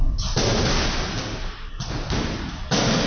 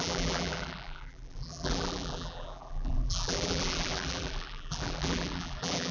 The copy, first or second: second